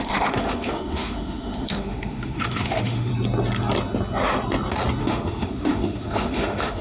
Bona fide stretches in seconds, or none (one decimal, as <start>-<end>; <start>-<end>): 3.1-5.0